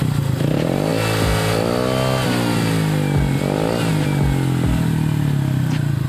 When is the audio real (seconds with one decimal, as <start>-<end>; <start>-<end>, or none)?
0.0-6.1